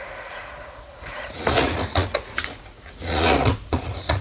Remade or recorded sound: remade